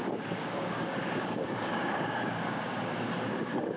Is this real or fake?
fake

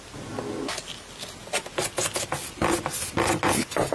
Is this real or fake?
real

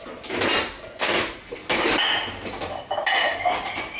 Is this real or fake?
real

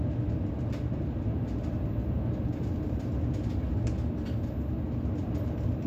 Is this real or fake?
real